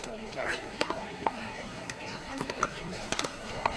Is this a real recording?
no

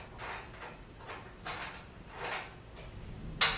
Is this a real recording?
yes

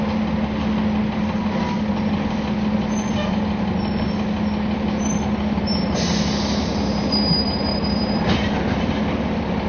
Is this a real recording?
yes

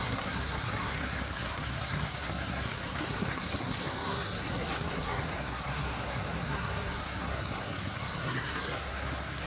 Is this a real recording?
no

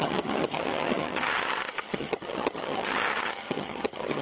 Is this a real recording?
no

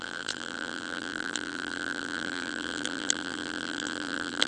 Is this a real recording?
no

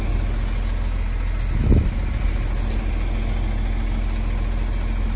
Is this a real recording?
yes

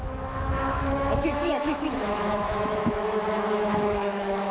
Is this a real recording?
no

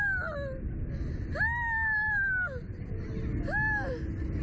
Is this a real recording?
yes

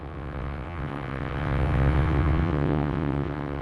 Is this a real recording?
no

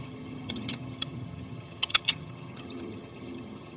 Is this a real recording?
no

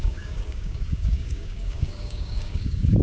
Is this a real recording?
no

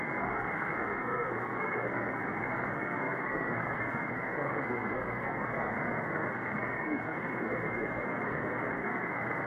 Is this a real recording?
no